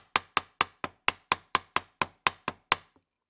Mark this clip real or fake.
real